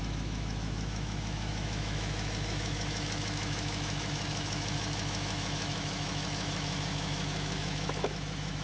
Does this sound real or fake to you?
fake